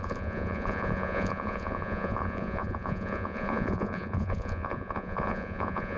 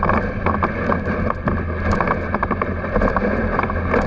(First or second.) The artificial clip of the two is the first